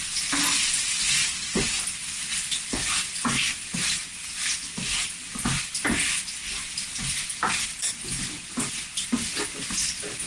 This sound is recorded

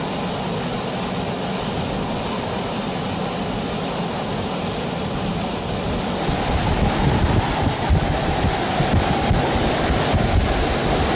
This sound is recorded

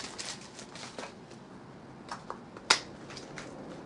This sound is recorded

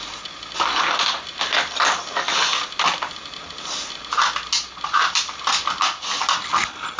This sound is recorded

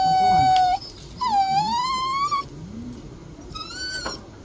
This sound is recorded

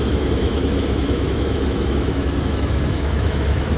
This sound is remade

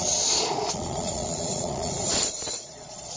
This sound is remade